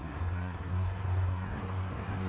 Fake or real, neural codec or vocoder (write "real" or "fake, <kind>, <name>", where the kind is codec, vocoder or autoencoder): fake, codec, SNAC